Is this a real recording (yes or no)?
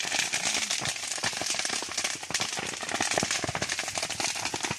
yes